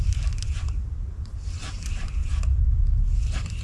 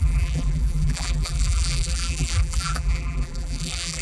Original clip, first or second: first